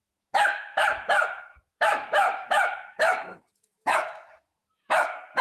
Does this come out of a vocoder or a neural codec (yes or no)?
yes